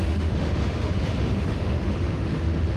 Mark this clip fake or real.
fake